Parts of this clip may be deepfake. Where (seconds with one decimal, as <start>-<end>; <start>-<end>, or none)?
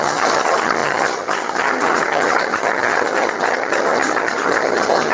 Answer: 0.0-5.1